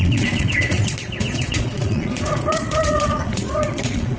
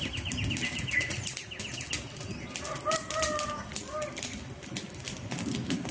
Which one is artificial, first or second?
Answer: first